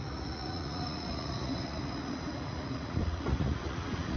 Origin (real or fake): fake